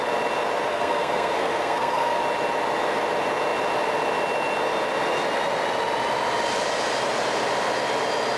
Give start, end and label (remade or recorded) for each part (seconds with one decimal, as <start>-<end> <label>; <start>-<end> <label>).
0.0-0.7 recorded; 0.7-2.2 remade; 2.2-8.4 recorded